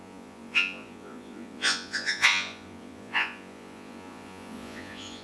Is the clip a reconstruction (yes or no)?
yes